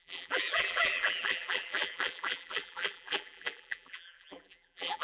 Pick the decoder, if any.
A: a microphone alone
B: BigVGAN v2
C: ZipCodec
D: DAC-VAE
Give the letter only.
B